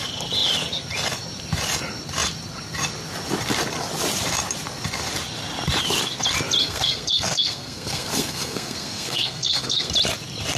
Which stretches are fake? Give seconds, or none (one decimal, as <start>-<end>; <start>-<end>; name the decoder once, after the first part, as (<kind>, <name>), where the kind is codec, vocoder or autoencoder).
6.6-9.9 (codec, SNAC)